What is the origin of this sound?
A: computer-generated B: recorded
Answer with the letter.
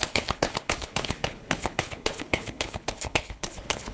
A